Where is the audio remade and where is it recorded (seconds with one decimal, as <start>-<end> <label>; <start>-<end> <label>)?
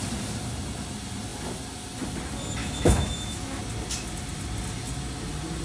0.0-2.6 recorded; 2.6-3.6 remade; 3.6-5.6 recorded